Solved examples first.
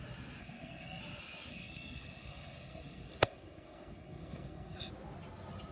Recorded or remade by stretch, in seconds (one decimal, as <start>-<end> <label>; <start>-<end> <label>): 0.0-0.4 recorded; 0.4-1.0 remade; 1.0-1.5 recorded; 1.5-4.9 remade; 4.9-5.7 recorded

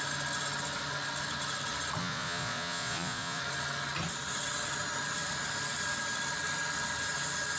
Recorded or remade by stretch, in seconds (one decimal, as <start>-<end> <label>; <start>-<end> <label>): 0.0-2.0 recorded; 2.0-3.4 remade; 3.4-7.6 recorded

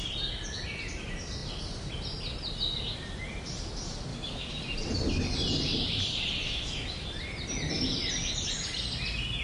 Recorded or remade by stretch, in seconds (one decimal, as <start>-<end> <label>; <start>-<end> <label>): 0.0-4.1 recorded; 4.1-4.6 remade; 4.6-9.4 recorded

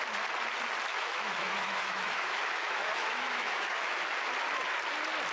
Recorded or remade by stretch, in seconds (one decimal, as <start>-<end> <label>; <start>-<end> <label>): 0.0-0.9 recorded; 0.9-4.1 remade; 4.1-5.3 recorded